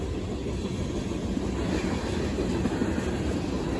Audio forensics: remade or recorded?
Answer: recorded